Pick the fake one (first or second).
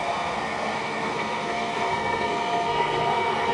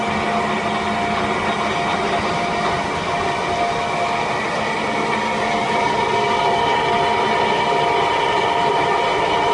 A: first